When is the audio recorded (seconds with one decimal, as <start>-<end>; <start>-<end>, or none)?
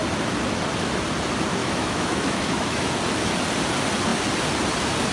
0.0-1.6; 2.9-5.1